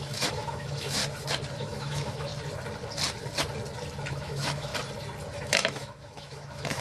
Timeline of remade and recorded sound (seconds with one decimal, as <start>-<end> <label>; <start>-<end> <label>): 0.0-1.0 remade; 1.0-1.5 recorded; 1.5-2.3 remade; 2.3-4.1 recorded; 4.1-4.7 remade; 4.7-5.3 recorded; 5.3-6.8 remade